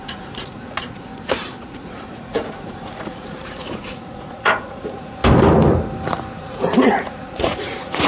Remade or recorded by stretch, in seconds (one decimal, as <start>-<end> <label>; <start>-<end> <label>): 0.0-1.1 remade; 1.1-1.6 recorded; 1.6-5.2 remade; 5.2-6.4 recorded; 6.4-8.1 remade